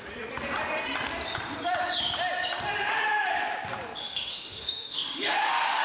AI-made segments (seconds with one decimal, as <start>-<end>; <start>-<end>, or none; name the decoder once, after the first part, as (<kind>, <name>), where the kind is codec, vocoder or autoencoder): 4.0-5.8 (autoencoder, DAC-VAE)